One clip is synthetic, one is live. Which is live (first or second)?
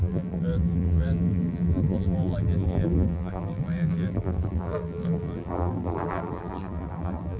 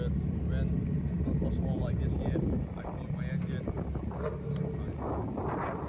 second